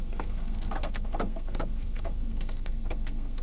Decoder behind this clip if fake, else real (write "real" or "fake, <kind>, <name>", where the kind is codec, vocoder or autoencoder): fake, codec, SNAC